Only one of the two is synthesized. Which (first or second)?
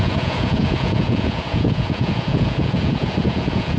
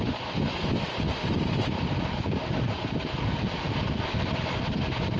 first